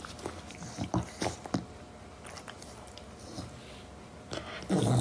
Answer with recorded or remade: recorded